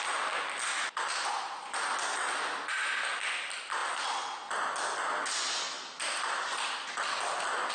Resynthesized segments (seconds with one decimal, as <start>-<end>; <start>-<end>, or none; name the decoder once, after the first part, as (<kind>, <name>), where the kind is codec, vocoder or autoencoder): none